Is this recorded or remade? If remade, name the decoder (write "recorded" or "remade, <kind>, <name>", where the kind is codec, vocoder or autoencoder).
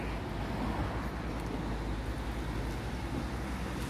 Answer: recorded